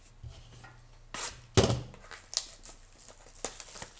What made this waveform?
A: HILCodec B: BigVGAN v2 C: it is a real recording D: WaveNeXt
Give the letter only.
C